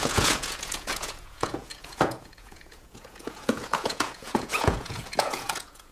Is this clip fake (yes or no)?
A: yes